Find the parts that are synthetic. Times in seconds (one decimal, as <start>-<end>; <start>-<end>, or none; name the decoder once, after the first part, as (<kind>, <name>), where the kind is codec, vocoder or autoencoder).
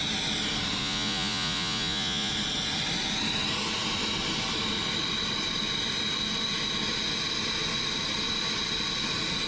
0.8-2.3 (vocoder, Vocos)